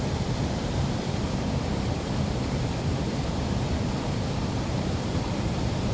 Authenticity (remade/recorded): remade